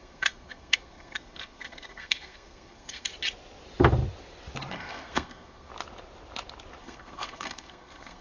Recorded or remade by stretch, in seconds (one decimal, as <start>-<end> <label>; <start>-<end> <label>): 0.0-3.1 remade; 3.1-4.7 recorded; 4.7-5.7 remade; 5.7-6.8 recorded; 6.8-8.2 remade